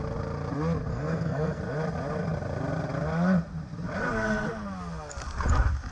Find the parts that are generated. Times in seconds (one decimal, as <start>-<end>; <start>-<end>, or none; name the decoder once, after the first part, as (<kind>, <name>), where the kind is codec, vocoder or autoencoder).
0.9-1.6 (codec, SNAC)